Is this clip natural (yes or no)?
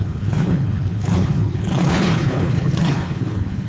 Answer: no